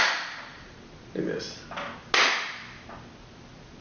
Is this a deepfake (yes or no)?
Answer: no